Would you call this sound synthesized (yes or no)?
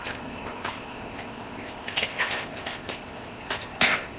yes